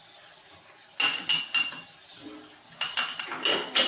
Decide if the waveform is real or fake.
real